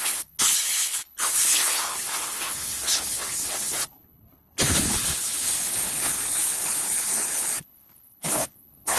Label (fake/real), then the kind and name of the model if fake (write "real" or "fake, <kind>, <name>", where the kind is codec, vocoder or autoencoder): fake, codec, HILCodec